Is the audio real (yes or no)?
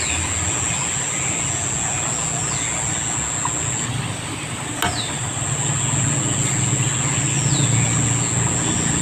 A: yes